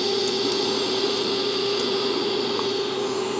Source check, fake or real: fake